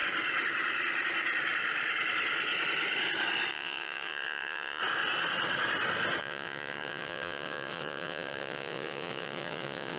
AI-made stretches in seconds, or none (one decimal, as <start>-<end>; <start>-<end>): 3.5-4.8; 6.2-10.0